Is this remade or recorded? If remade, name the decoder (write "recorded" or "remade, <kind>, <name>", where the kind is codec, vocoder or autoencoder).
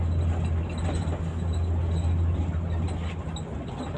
recorded